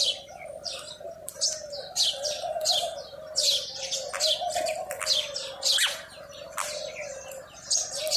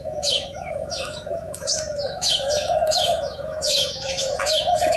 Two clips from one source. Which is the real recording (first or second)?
first